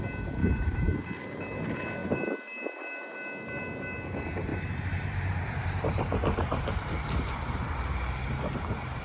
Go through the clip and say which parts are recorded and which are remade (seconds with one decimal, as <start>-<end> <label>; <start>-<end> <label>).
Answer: 0.0-0.4 recorded; 0.4-1.0 remade; 1.0-4.5 recorded; 4.5-9.0 remade